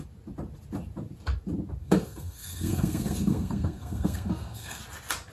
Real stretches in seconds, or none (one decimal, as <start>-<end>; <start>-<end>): 0.0-1.8; 4.8-5.3